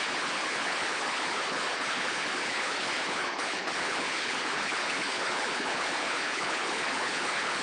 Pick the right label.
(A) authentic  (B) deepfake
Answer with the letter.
B